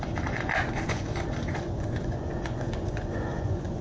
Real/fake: fake